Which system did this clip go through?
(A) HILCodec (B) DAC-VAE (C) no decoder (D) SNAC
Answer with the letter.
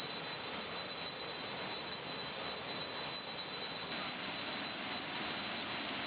C